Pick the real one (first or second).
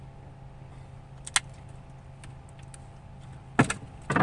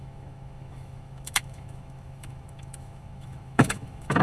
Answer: first